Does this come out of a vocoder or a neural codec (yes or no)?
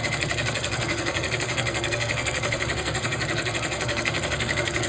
yes